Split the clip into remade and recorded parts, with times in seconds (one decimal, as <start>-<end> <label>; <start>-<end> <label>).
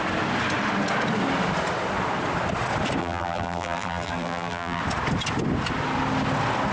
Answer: 0.0-3.0 recorded; 3.0-4.8 remade; 4.8-6.7 recorded